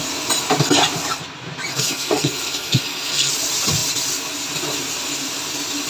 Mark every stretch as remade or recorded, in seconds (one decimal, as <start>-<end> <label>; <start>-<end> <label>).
0.0-1.7 recorded; 1.7-3.3 remade; 3.3-5.9 recorded